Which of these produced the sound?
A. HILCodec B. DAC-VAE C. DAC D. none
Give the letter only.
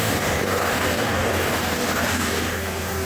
C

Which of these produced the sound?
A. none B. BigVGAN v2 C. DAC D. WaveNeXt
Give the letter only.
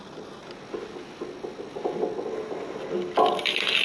A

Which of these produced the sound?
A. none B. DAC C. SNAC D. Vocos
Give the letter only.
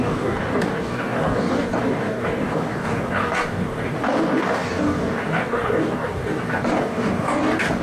B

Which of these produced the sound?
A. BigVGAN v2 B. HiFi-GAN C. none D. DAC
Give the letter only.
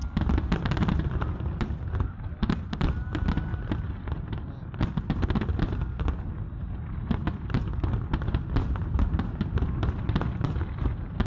C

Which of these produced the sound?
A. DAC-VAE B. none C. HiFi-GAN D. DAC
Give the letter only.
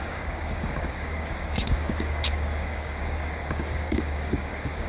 D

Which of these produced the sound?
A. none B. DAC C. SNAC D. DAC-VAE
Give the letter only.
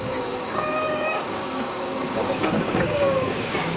B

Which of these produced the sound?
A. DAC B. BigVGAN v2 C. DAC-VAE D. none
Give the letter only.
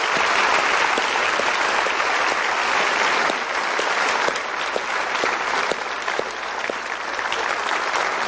D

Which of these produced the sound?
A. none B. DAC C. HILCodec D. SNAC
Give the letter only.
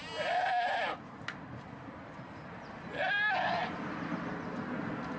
A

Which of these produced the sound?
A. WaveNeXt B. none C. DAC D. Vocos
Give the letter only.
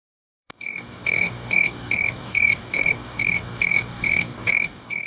C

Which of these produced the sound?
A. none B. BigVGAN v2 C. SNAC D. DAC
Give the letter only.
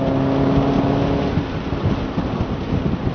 A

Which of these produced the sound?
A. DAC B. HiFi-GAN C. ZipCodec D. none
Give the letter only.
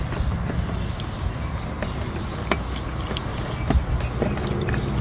D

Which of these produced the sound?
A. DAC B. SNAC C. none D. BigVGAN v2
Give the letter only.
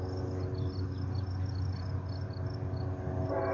C